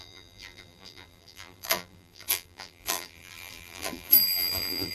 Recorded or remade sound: remade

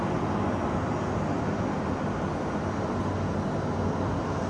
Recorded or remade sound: recorded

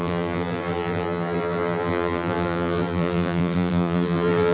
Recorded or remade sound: remade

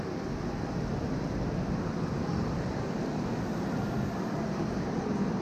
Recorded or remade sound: recorded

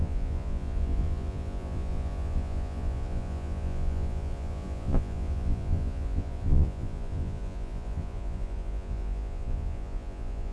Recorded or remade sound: remade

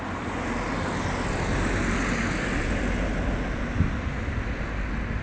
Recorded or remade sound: recorded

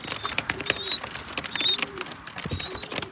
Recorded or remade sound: remade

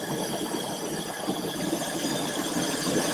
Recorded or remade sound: remade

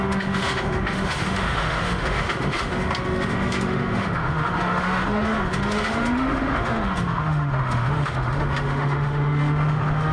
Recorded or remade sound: remade